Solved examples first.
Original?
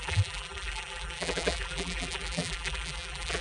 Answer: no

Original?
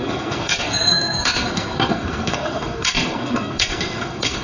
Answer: no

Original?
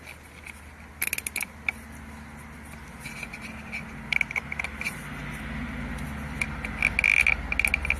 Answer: yes